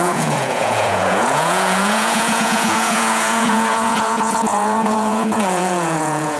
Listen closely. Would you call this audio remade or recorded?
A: remade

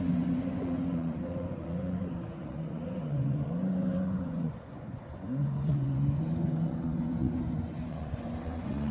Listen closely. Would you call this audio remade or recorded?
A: remade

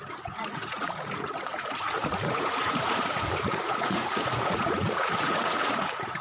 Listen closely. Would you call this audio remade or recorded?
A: remade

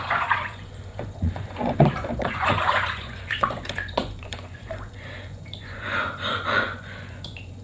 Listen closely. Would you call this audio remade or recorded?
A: remade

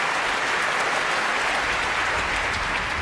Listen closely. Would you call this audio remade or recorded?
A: recorded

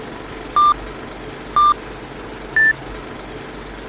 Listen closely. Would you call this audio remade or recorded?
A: recorded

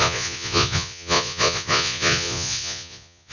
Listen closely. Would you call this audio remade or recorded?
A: remade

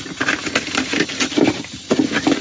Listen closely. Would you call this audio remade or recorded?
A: recorded